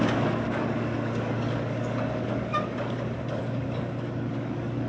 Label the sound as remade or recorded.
remade